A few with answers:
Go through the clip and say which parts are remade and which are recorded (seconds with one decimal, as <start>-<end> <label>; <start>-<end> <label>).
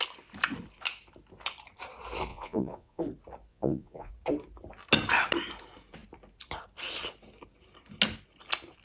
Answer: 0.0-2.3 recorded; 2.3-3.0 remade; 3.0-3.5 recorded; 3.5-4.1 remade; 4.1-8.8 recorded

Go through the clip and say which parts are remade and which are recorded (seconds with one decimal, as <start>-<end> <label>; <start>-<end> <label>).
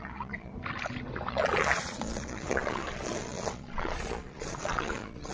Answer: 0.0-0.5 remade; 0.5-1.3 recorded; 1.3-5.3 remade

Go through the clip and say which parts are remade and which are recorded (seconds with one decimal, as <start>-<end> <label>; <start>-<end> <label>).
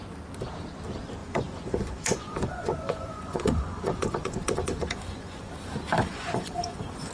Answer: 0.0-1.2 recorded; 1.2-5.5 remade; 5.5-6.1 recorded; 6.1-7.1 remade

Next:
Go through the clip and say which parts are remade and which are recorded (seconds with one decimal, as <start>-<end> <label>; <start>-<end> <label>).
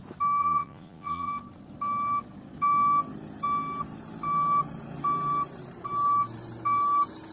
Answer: 0.0-0.4 recorded; 0.4-1.3 remade; 1.3-7.3 recorded